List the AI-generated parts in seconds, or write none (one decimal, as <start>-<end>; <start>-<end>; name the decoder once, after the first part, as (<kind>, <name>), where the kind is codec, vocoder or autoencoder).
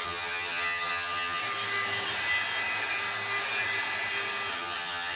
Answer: 0.0-1.4 (vocoder, HiFi-GAN); 4.5-5.2